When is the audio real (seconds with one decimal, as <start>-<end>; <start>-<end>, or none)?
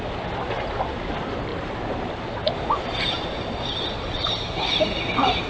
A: 0.0-5.5